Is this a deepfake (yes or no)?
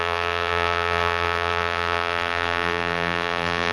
yes